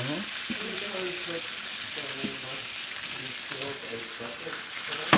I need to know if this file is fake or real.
real